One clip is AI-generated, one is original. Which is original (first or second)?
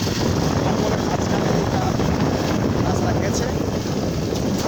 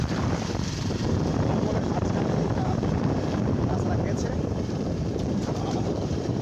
first